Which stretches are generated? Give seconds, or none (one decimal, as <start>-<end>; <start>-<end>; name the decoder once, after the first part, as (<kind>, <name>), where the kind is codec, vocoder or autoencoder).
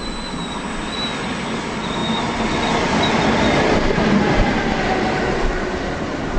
none